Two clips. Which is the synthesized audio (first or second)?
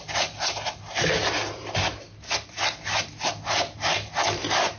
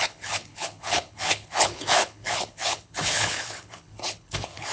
second